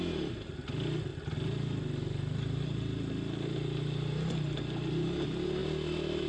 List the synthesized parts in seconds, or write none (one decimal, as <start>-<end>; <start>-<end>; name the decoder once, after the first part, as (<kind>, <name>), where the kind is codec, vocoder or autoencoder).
none